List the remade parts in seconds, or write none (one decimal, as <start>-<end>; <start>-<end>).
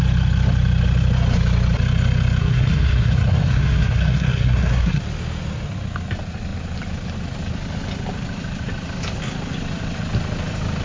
2.4-5.0